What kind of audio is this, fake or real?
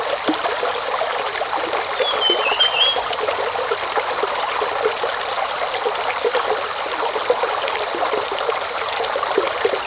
real